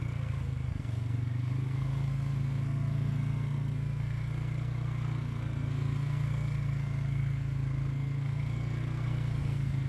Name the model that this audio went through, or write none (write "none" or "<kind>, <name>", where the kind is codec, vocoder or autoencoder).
codec, SNAC